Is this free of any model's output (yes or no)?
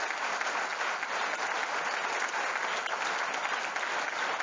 yes